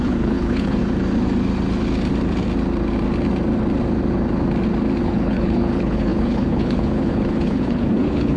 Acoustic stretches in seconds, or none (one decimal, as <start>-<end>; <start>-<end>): 0.8-5.0